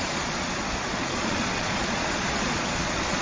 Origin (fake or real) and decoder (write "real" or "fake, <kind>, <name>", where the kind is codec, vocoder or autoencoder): fake, vocoder, Vocos